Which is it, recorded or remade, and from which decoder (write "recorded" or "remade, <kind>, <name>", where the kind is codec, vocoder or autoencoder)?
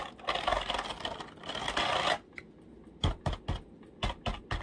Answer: recorded